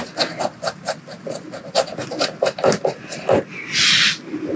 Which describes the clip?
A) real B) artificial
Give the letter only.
A